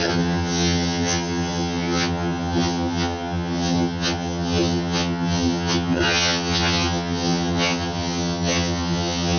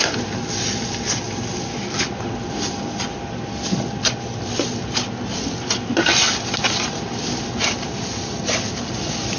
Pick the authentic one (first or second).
second